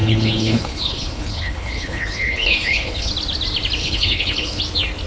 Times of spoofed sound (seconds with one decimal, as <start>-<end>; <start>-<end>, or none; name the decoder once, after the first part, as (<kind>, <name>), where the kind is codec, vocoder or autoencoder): 0.0-3.1 (codec, HILCodec); 3.8-4.6